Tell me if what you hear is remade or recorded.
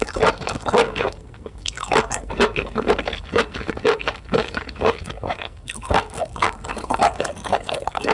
remade